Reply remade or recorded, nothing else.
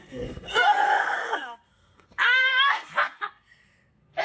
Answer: remade